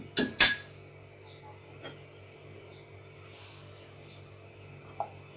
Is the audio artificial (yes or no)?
no